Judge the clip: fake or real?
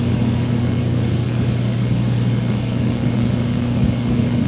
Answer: fake